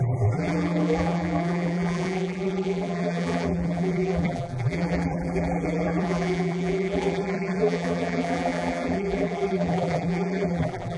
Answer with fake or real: fake